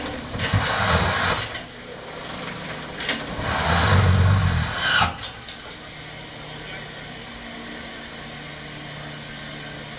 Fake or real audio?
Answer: real